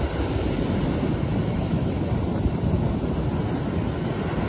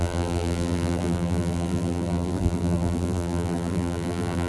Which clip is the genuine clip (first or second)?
first